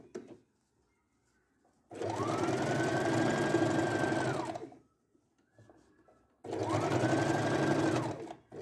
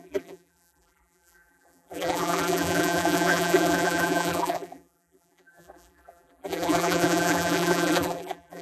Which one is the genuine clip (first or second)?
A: first